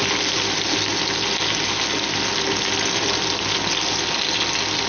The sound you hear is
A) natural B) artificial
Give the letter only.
A